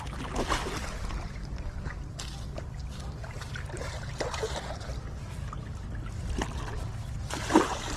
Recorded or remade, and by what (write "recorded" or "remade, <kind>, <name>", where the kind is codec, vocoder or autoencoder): recorded